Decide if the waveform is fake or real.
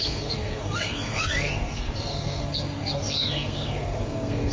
fake